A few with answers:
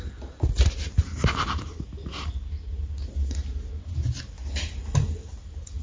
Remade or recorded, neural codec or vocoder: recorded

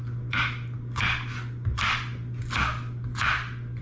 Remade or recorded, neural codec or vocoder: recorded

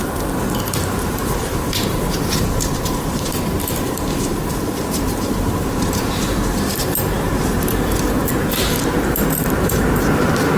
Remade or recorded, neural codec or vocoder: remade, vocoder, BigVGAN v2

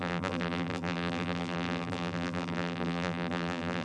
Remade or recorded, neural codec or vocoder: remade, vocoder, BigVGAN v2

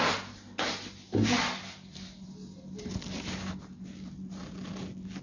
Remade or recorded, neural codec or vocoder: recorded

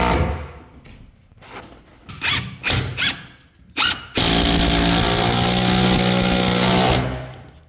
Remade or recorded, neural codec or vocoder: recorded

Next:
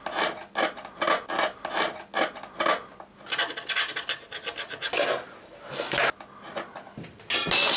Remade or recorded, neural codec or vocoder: recorded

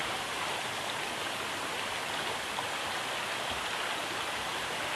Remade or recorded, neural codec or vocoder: recorded